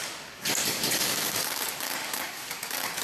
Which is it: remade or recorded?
remade